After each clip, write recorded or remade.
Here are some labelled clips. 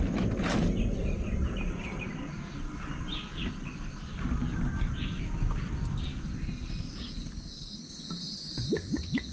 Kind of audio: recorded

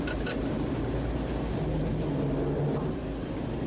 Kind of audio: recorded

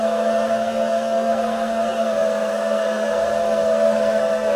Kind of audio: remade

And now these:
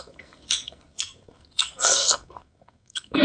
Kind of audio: remade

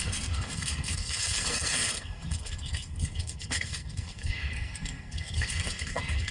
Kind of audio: remade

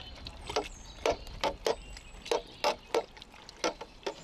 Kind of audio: recorded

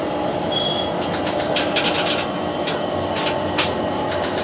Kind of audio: recorded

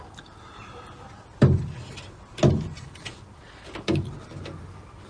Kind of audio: recorded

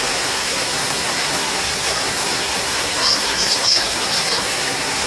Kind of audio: remade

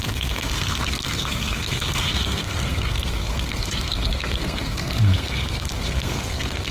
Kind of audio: remade